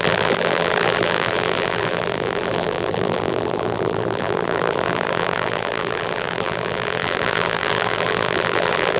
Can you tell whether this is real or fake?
fake